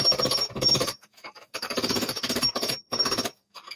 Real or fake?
fake